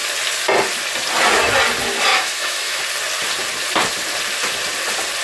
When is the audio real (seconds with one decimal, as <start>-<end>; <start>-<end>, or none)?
0.0-2.1; 2.8-5.2